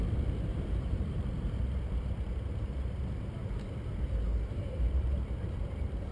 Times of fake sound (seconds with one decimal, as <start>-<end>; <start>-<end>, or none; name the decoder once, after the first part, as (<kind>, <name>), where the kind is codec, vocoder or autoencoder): 0.5-1.6 (vocoder, BigVGAN v2); 4.3-6.1